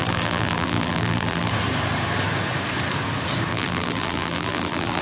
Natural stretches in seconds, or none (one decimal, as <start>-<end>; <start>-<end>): 1.5-3.5